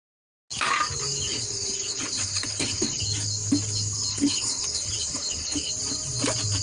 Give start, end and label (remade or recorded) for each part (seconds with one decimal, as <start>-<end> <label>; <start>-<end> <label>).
0.0-1.3 recorded; 1.3-3.0 remade; 3.0-4.1 recorded; 4.1-5.7 remade; 5.7-6.6 recorded